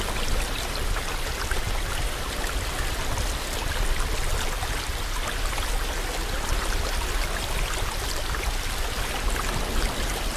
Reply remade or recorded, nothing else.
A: recorded